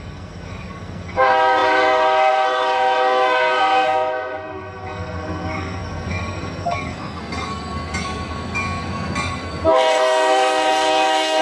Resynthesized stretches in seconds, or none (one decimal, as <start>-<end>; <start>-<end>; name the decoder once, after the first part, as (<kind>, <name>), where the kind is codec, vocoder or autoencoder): 0.0-11.4 (codec, SNAC)